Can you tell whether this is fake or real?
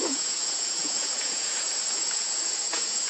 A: fake